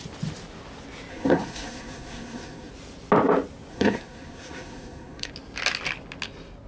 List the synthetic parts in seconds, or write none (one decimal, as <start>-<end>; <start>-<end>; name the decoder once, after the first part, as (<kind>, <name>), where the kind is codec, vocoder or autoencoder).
1.1-2.7 (codec, SNAC); 3.7-5.3